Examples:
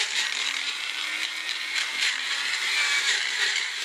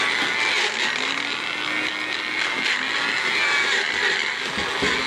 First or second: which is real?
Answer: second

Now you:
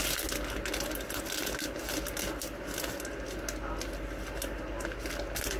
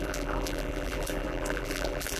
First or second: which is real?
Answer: first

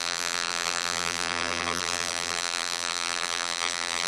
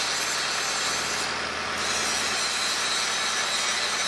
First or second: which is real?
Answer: second